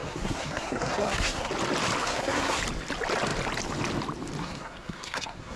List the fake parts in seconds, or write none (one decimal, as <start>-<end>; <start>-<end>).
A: 0.0-1.5; 2.0-2.6; 4.4-5.6